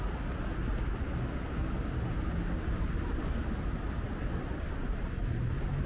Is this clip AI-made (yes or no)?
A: no